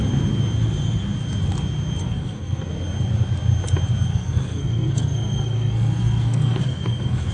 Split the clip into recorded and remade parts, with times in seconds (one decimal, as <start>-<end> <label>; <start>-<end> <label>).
0.0-2.0 recorded; 2.0-2.7 remade; 2.7-4.1 recorded; 4.1-7.3 remade